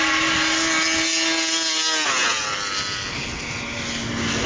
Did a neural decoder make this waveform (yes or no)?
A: no